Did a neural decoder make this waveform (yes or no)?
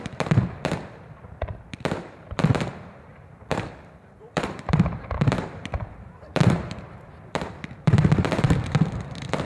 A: yes